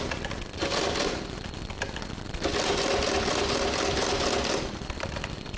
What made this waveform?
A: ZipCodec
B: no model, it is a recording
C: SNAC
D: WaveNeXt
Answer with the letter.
B